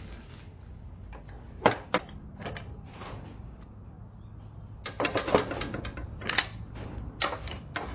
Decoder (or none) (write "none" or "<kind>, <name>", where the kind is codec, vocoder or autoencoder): none